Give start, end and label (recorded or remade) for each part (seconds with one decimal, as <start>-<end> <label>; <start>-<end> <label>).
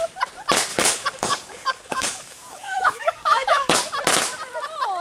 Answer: 0.0-0.7 recorded; 0.7-3.7 remade; 3.7-5.0 recorded